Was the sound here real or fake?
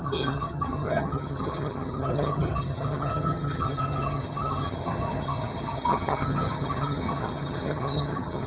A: fake